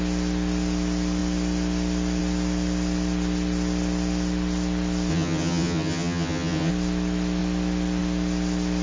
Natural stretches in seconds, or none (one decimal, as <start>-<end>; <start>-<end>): 0.0-5.1; 6.7-8.8